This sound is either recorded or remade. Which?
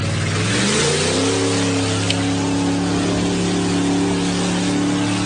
recorded